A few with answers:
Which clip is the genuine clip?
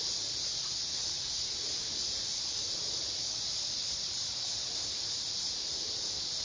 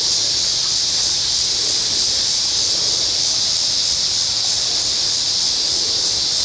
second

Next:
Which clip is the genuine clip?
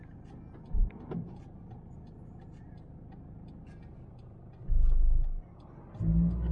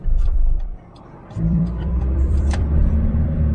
first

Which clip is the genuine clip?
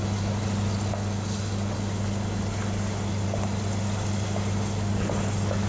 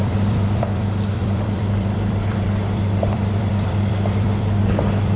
first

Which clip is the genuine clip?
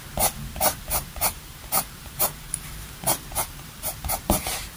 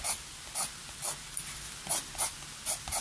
second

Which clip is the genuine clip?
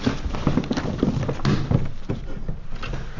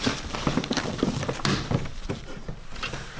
first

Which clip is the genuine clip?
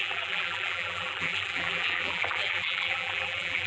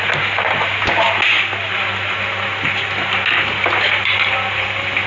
second